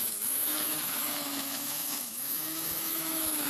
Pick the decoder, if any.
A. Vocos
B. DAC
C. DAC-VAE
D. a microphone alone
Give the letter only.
C